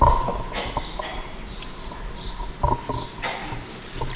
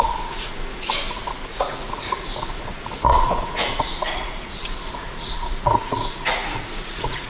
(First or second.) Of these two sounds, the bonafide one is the first